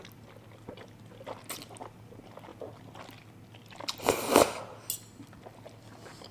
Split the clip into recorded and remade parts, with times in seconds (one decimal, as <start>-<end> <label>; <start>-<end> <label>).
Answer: 0.0-6.3 recorded